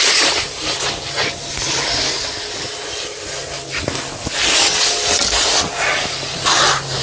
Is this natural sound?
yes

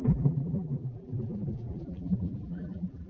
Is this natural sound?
no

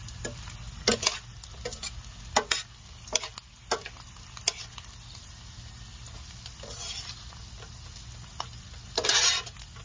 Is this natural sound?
yes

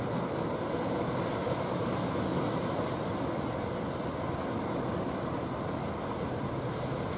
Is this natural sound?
yes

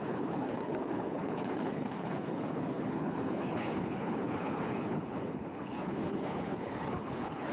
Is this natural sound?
no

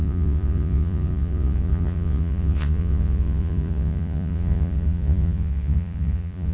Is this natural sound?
no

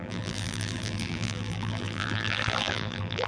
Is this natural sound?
no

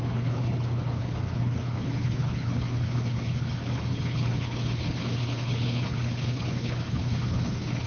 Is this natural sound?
no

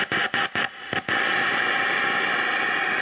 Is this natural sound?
yes